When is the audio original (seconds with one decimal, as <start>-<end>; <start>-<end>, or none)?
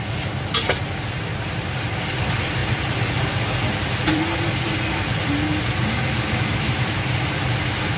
0.0-2.6; 7.3-8.0